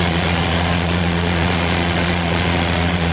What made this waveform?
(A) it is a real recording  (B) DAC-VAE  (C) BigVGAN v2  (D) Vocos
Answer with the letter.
D